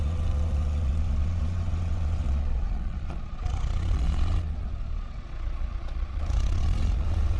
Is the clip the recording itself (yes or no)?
no